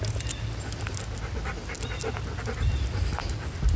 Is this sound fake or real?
real